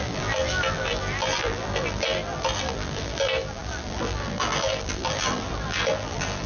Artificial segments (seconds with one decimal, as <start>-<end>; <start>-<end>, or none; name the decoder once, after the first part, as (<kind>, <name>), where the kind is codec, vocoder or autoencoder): 0.0-6.5 (vocoder, BigVGAN v2)

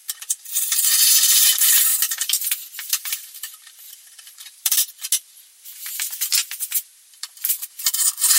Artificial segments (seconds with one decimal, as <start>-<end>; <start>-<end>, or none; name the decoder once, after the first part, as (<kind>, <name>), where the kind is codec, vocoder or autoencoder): 0.0-5.0 (vocoder, BigVGAN v2); 6.4-7.7

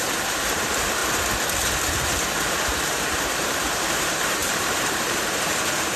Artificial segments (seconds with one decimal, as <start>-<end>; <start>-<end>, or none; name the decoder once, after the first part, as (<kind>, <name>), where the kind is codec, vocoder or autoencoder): 0.0-1.0 (vocoder, BigVGAN v2); 2.9-6.0